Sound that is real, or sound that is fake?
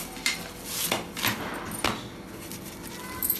real